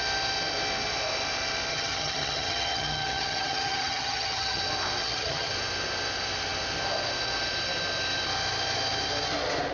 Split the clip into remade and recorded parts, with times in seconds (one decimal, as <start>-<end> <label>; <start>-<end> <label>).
0.0-1.7 recorded; 1.7-4.6 remade; 4.6-5.0 recorded; 5.0-5.5 remade; 5.5-9.7 recorded